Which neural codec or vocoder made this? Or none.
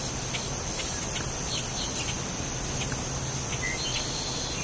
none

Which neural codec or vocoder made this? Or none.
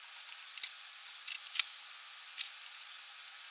none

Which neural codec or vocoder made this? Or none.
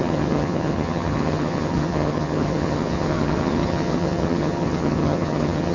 vocoder, HiFi-GAN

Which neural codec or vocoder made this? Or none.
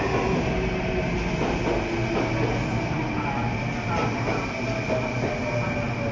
none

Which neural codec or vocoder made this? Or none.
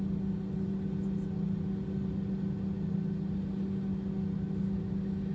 none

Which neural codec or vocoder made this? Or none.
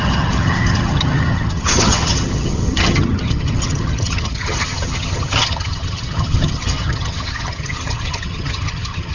vocoder, HiFi-GAN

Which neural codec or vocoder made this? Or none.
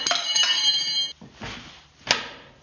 none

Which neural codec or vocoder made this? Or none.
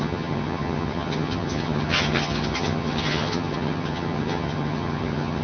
vocoder, HiFi-GAN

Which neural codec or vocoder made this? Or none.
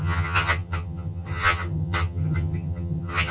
vocoder, HiFi-GAN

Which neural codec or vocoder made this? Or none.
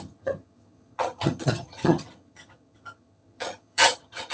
vocoder, HiFi-GAN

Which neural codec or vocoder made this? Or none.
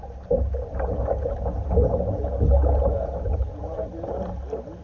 none